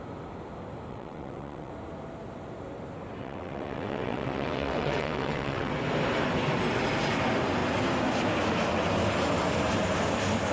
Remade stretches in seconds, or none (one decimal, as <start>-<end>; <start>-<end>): 0.9-1.7; 3.2-5.7